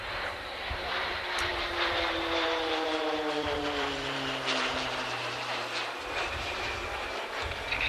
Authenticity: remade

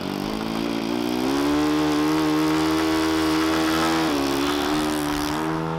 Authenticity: recorded